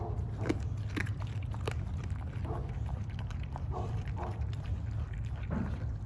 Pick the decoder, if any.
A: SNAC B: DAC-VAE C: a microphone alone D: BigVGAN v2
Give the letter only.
C